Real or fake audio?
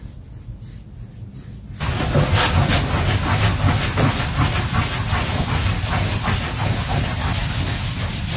real